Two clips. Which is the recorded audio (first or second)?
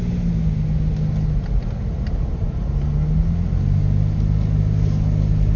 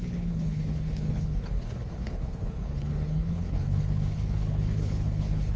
first